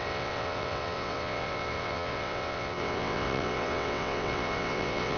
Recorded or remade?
remade